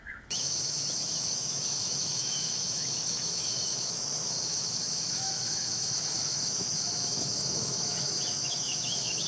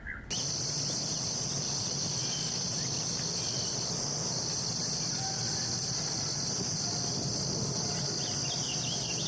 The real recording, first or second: second